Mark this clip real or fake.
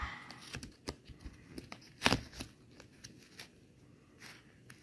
real